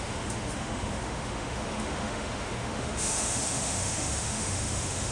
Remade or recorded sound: remade